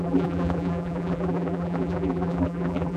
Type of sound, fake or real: fake